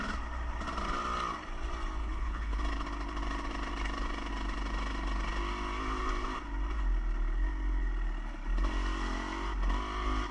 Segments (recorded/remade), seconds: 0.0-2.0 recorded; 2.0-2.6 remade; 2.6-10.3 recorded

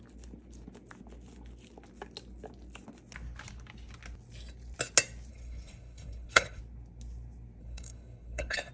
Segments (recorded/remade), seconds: 0.0-5.3 recorded; 5.3-6.6 remade; 6.6-7.6 recorded; 7.6-8.7 remade